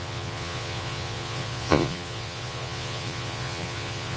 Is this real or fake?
fake